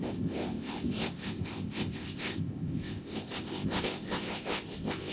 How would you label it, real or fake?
fake